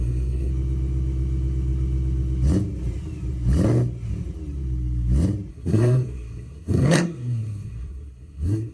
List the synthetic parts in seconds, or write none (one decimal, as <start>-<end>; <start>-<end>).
0.0-0.5; 5.5-8.7